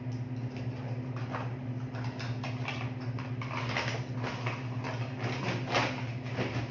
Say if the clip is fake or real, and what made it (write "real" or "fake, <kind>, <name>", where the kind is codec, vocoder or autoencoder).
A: real